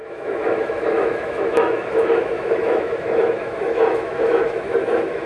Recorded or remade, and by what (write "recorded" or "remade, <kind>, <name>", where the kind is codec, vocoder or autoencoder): remade, autoencoder, DAC-VAE